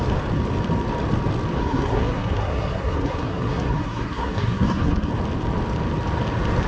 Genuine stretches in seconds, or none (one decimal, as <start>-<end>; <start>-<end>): 0.0-1.6; 5.1-6.7